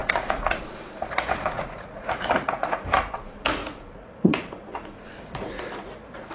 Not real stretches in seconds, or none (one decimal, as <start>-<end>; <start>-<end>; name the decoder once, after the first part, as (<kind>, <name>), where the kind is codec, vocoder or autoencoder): 0.0-6.3 (vocoder, Vocos)

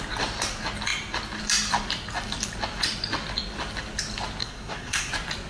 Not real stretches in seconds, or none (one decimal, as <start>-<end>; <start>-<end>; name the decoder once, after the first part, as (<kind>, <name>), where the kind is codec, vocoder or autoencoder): 4.4-5.1 (codec, SNAC)

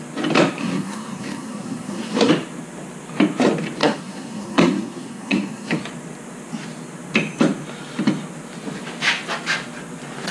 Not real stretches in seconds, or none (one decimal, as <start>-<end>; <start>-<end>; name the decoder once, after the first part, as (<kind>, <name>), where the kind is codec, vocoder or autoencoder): 0.6-2.3 (codec, SNAC); 3.8-5.8